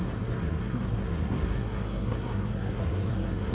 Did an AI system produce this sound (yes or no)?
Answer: yes